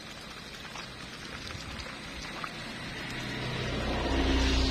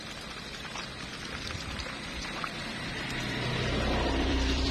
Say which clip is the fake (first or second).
second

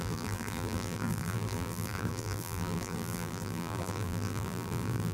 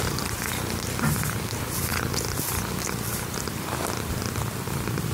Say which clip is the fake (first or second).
first